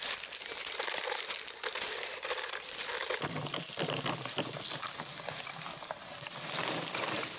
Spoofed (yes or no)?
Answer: no